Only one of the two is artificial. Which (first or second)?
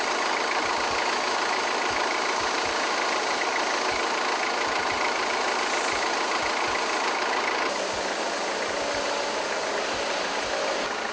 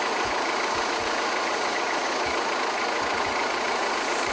second